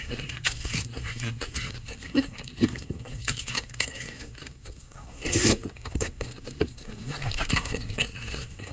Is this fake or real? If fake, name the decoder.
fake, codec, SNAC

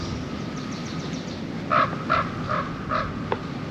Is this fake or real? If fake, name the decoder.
real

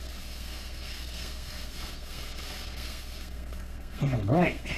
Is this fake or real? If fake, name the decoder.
fake, codec, SNAC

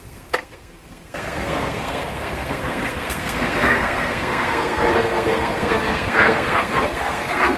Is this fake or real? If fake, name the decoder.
fake, codec, SNAC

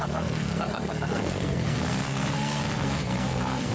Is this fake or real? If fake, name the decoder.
fake, codec, SNAC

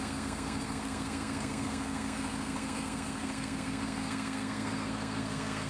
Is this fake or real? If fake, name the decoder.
fake, codec, SNAC